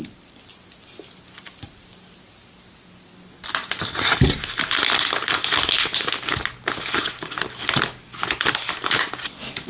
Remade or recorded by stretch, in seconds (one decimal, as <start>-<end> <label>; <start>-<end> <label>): 0.0-9.7 recorded